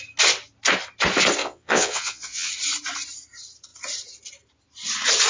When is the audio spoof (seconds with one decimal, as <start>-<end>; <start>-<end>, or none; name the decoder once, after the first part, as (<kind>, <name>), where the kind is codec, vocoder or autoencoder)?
1.4-2.5 (vocoder, WaveNeXt)